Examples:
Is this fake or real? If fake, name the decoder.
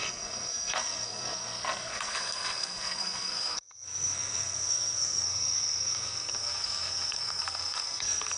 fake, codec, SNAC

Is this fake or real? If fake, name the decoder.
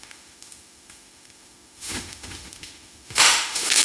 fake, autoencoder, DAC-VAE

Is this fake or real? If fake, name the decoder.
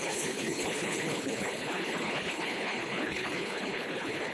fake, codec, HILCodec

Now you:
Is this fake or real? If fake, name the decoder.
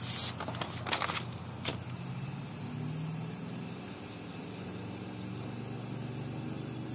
real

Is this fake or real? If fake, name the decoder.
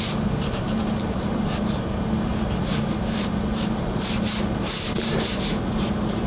fake, vocoder, BigVGAN v2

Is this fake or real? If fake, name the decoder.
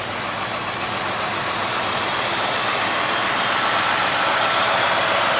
real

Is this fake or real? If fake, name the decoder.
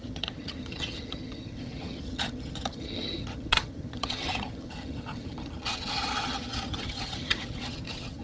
fake, vocoder, HiFi-GAN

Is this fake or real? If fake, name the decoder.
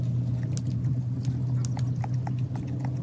real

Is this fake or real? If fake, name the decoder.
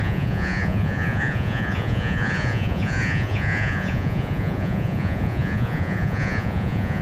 fake, vocoder, Vocos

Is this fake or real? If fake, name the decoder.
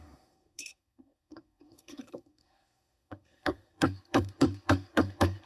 fake, codec, SNAC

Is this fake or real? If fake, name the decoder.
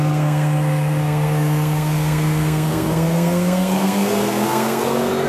fake, codec, SNAC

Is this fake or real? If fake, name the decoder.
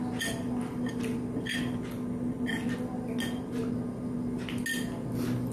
real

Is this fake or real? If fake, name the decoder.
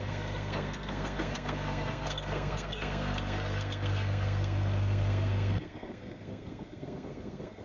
fake, codec, SNAC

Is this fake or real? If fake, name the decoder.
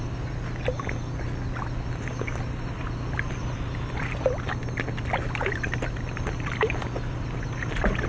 real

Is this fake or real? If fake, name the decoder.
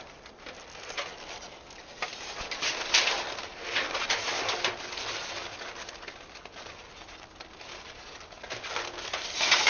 real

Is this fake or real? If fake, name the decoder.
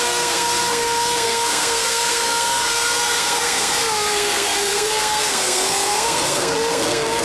fake, codec, SNAC